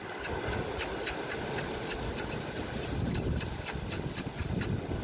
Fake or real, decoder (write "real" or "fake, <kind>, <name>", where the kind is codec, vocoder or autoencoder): real